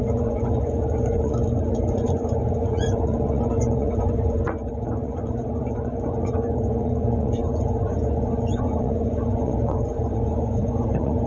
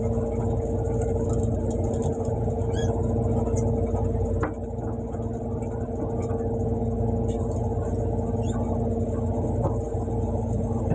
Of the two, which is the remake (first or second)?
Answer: first